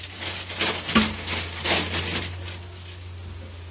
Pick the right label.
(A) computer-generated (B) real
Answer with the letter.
B